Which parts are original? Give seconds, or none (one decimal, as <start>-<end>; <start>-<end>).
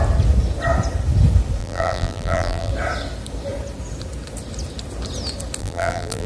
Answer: 0.0-1.6; 2.7-5.6